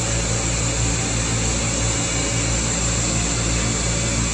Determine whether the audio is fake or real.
real